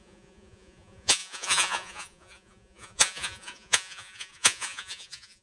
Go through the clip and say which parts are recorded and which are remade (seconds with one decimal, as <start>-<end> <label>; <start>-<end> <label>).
0.0-5.4 remade